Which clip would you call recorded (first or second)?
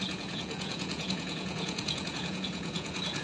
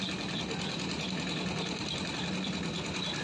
second